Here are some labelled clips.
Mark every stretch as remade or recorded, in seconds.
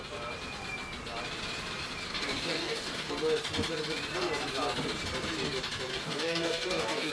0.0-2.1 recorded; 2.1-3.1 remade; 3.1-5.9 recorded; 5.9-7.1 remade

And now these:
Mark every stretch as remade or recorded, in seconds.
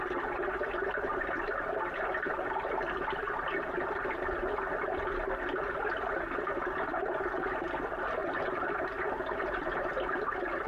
0.0-10.7 recorded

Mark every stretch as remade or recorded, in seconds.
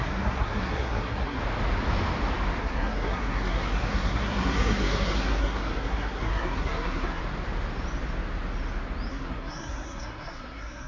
0.0-1.4 remade; 1.4-2.6 recorded; 2.6-7.2 remade; 7.2-9.1 recorded; 9.1-10.9 remade